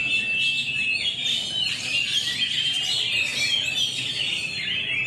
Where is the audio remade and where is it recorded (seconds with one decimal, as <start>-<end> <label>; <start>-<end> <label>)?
0.0-5.1 recorded